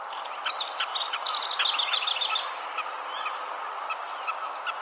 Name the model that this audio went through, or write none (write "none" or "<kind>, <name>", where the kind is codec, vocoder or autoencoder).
none